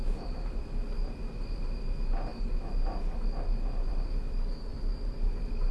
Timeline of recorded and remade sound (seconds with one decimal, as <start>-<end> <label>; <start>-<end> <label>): 0.0-5.7 recorded